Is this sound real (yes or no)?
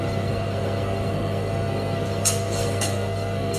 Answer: no